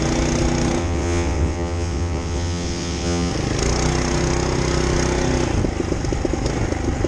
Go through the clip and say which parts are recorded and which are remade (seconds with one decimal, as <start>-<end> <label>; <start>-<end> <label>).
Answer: 0.0-0.8 recorded; 0.8-3.3 remade; 3.3-7.1 recorded